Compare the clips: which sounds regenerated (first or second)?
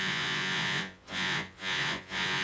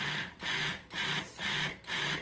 first